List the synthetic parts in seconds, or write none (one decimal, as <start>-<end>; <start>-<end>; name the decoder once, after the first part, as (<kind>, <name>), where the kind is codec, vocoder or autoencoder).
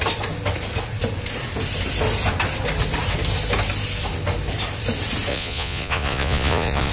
5.3-6.9 (vocoder, Vocos)